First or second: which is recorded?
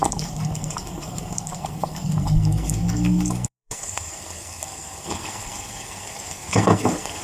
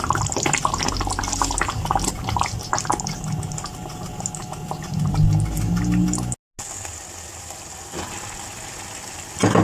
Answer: second